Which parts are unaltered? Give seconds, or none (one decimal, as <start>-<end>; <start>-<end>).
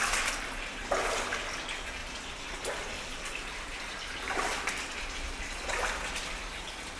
0.0-2.0; 4.7-7.0